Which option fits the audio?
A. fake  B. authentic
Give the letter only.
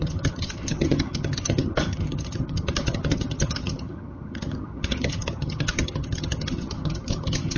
A